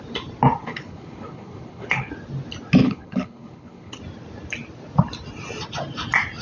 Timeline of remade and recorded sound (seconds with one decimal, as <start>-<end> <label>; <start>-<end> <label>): 0.0-0.6 recorded; 0.6-2.1 remade; 2.1-2.8 recorded; 2.8-4.0 remade; 4.0-6.4 recorded